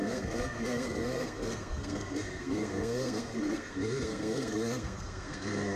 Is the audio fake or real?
fake